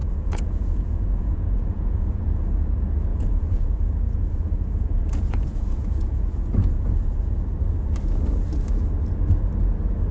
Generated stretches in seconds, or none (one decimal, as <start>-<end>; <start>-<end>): 0.0-2.2; 3.1-7.4